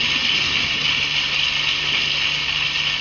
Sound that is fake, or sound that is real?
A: real